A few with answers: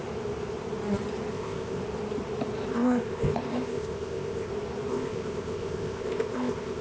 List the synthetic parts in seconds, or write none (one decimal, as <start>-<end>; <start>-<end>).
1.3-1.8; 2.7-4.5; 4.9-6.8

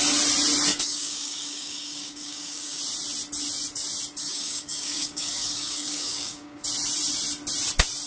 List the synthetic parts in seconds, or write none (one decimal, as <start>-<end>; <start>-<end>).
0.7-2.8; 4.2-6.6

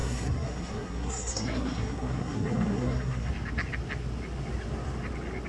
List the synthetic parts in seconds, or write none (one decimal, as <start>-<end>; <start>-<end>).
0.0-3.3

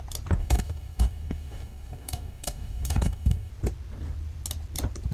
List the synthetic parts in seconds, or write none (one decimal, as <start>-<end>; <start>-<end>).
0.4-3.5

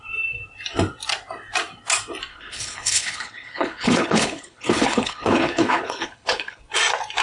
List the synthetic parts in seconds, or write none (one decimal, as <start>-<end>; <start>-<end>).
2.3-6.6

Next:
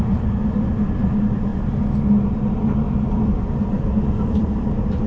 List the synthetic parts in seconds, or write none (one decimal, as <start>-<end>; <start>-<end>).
0.0-1.5; 2.3-5.1